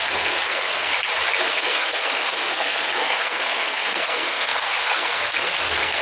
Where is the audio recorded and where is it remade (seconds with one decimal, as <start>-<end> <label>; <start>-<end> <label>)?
0.0-0.9 remade; 0.9-1.5 recorded; 1.5-6.0 remade